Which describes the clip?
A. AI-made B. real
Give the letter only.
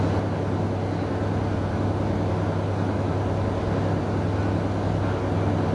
B